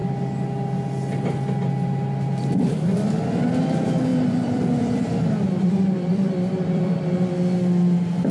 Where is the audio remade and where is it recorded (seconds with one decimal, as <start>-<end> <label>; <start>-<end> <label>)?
0.0-4.1 recorded; 4.1-7.3 remade; 7.3-8.3 recorded